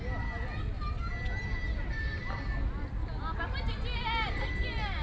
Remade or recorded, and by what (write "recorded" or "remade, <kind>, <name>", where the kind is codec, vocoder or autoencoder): recorded